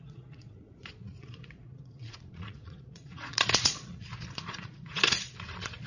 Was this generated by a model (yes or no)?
yes